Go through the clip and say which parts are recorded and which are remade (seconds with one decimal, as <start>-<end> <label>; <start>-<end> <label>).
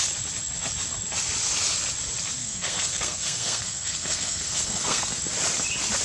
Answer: 0.0-2.4 recorded; 2.4-5.2 remade; 5.2-6.0 recorded